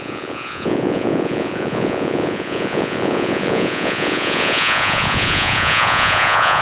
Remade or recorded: remade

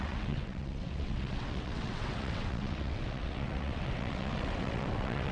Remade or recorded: remade